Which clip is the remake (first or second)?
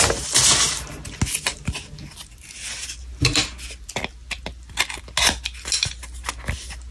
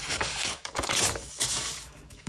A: second